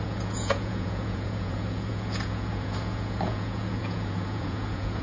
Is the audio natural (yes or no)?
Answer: no